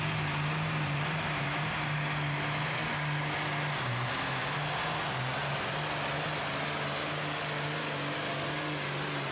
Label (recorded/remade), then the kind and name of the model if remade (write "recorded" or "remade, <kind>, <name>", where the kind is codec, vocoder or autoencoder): recorded